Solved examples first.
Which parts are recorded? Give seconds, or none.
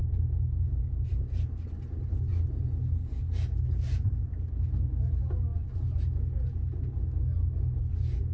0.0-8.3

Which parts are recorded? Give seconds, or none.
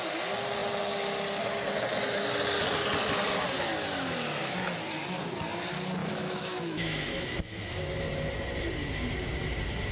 0.0-6.0; 7.8-9.9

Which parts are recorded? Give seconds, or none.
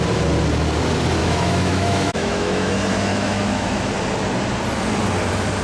0.0-1.2; 2.7-3.1; 3.9-5.6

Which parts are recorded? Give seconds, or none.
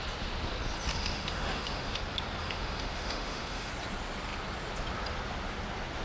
0.0-0.9; 2.0-2.4; 3.7-6.0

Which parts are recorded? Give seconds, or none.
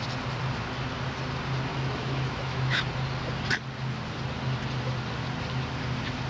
0.0-1.7; 2.8-6.3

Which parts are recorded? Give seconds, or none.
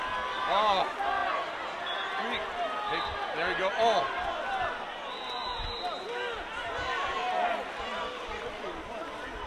0.0-9.5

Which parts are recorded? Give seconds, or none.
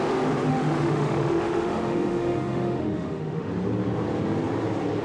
0.0-0.5; 3.5-5.0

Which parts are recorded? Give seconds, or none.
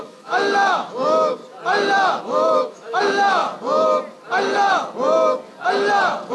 1.4-2.2; 3.4-6.3